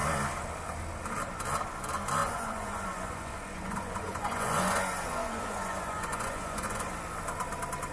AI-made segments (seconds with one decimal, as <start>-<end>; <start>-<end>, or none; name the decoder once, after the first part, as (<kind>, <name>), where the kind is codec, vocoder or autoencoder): 2.2-6.9 (vocoder, Vocos)